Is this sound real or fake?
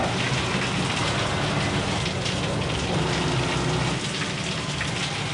real